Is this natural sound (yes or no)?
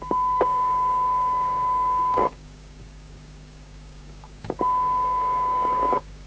no